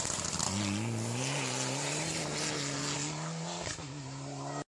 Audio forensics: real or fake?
real